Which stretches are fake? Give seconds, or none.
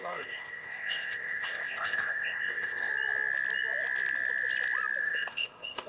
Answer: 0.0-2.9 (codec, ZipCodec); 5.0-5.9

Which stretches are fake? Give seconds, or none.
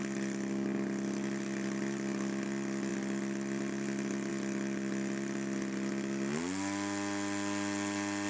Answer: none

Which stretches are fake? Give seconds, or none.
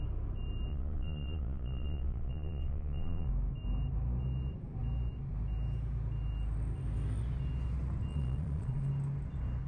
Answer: 0.7-3.3 (vocoder, Vocos); 8.1-8.9